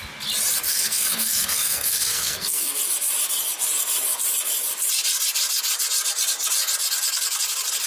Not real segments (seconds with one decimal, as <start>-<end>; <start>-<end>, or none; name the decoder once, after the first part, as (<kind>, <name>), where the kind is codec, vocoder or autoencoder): 0.7-2.8 (codec, SNAC)